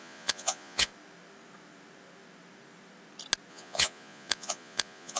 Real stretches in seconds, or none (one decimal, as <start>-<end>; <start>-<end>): 0.9-3.5